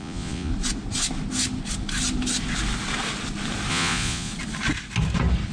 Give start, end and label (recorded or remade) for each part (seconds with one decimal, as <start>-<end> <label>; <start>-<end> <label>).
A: 0.0-0.5 remade; 0.5-3.7 recorded; 3.7-4.3 remade; 4.3-5.5 recorded